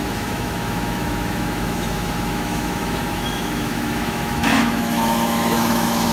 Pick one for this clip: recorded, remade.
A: remade